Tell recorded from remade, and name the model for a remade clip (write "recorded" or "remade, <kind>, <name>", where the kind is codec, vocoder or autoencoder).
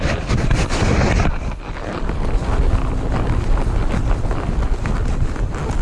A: recorded